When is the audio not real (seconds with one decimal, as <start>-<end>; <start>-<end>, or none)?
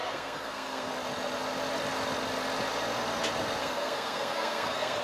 0.0-0.9; 3.6-5.0